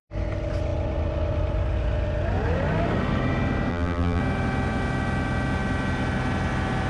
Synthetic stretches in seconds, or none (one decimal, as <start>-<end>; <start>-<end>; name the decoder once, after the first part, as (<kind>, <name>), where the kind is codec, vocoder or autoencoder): 3.7-4.2 (vocoder, BigVGAN v2)